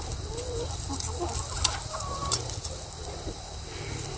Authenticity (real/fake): real